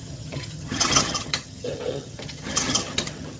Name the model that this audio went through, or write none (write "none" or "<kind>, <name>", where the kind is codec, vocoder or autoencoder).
vocoder, HiFi-GAN